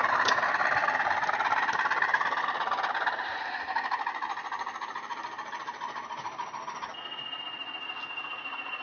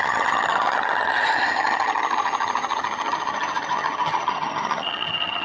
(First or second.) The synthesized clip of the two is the second